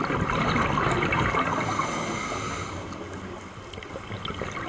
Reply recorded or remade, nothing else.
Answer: recorded